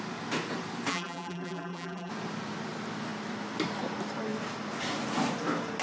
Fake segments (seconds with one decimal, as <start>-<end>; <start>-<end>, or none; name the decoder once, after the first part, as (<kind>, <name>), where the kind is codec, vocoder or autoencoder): 0.9-2.1 (vocoder, BigVGAN v2)